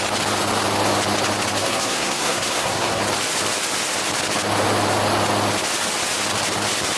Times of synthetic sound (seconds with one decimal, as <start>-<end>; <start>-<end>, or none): 1.6-3.0